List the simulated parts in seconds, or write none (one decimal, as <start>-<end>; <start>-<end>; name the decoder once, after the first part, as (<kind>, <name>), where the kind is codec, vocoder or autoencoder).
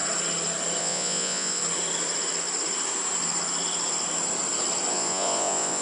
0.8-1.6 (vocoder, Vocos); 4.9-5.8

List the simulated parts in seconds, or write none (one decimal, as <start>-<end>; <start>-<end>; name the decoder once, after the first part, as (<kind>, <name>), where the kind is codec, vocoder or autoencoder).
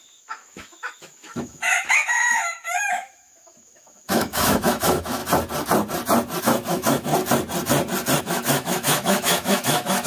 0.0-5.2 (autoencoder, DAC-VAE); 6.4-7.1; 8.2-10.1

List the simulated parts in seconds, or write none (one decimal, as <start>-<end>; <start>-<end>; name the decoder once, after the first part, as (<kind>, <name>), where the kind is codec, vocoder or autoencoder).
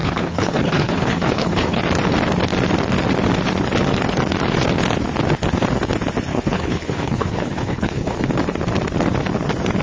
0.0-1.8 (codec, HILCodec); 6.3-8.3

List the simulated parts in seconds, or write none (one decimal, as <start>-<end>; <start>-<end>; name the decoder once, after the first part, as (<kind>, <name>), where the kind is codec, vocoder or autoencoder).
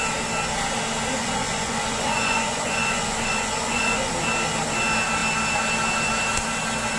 1.2-4.1 (vocoder, Vocos)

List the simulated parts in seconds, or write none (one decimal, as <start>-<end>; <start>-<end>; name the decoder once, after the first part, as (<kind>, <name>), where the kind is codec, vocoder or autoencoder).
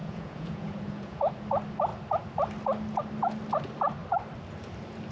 0.0-1.3 (vocoder, Vocos)